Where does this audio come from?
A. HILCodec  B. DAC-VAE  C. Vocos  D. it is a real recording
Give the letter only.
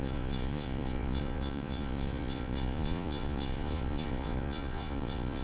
C